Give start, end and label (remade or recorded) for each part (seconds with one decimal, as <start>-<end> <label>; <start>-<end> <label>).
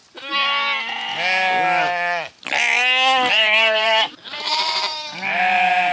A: 0.0-3.3 recorded; 3.3-5.9 remade